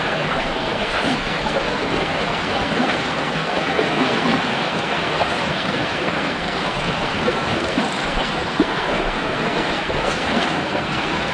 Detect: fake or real fake